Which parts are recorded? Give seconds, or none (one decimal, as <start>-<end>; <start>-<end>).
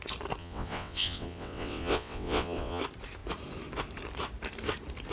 0.0-0.4; 2.8-5.1